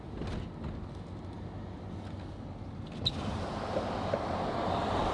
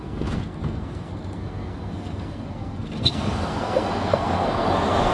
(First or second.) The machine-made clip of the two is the second